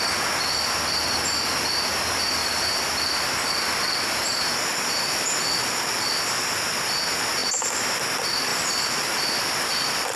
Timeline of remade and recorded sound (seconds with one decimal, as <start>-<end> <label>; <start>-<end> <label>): 0.0-2.4 recorded; 2.4-6.3 remade; 6.3-8.5 recorded; 8.5-10.2 remade